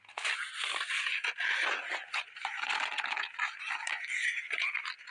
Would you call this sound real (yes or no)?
yes